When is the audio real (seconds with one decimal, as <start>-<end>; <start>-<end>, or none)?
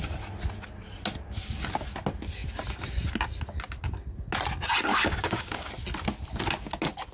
0.0-4.9; 5.7-7.1